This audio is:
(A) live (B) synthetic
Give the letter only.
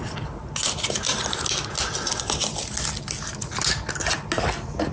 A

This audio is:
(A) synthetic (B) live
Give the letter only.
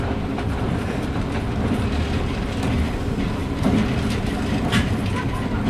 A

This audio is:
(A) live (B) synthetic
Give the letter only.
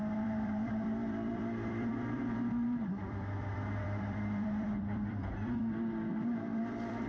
B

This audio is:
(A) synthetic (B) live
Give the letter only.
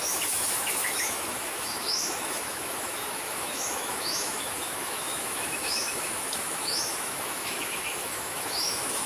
A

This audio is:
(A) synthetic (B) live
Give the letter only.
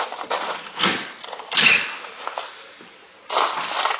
B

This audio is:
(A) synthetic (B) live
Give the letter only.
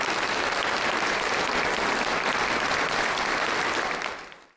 B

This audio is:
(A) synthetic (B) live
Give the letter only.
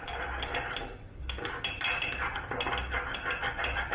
B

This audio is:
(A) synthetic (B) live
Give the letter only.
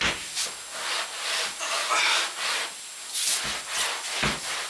B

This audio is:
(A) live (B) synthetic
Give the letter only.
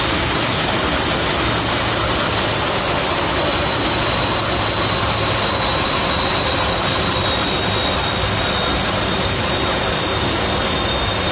A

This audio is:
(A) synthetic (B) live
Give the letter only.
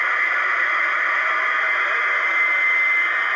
B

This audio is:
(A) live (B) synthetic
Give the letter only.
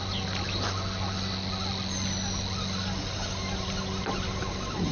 A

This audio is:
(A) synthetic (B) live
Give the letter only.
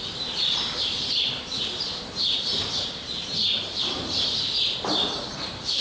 B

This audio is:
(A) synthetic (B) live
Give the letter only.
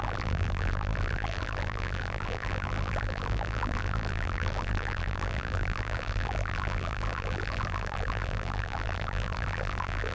A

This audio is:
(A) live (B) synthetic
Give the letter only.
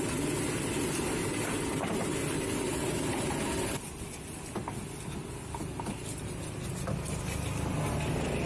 A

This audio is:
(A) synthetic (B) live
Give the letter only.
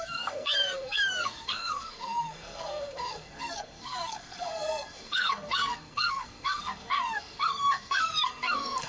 A